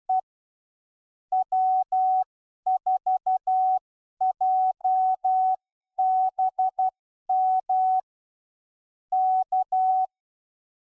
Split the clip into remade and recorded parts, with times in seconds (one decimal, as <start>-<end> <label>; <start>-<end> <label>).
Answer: 0.0-4.8 recorded; 4.8-7.0 remade; 7.0-9.9 recorded; 9.9-10.6 remade; 10.6-11.0 recorded